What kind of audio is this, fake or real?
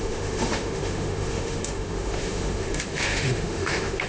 fake